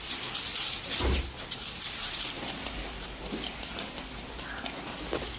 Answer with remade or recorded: recorded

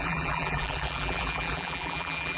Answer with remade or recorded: remade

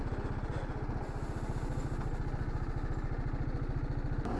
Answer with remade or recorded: recorded